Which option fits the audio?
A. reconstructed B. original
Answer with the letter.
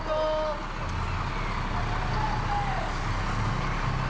B